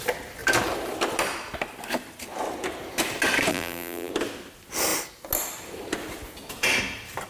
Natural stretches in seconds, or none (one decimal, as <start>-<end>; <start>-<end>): 0.0-3.5; 4.1-7.3